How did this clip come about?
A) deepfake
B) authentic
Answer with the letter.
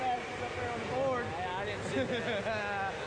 B